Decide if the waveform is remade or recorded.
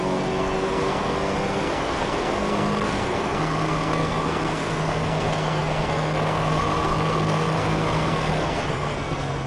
remade